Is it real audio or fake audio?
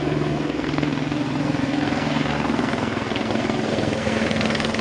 fake